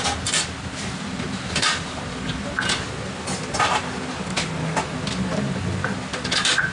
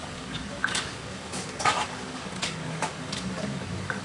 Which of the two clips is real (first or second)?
first